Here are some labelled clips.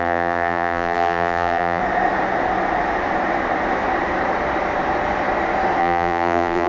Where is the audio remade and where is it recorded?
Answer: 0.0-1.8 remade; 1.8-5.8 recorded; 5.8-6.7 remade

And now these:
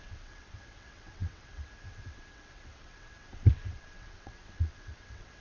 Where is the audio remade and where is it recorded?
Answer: 0.0-5.4 remade

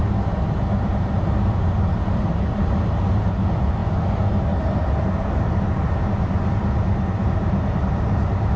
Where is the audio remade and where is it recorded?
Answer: 0.0-0.9 recorded; 0.9-3.8 remade; 3.8-5.0 recorded; 5.0-5.8 remade; 5.8-6.3 recorded; 6.3-8.6 remade

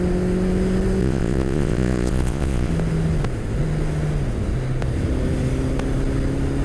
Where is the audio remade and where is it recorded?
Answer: 0.0-1.0 recorded; 1.0-2.7 remade; 2.7-6.6 recorded

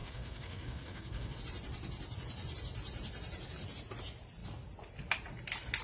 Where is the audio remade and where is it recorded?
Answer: 0.0-1.4 remade; 1.4-5.8 recorded

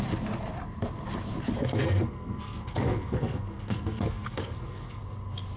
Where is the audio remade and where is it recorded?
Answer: 0.0-1.6 recorded; 1.6-5.0 remade; 5.0-5.6 recorded

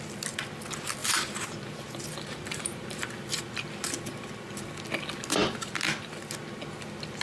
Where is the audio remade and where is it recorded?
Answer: 0.0-1.0 recorded; 1.0-3.4 remade; 3.4-7.2 recorded

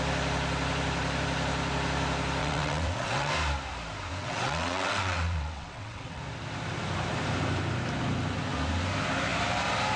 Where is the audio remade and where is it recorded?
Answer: 0.0-2.4 recorded; 2.4-3.3 remade; 3.3-4.2 recorded; 4.2-6.2 remade; 6.2-10.0 recorded